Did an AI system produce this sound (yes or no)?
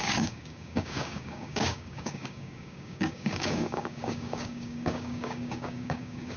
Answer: yes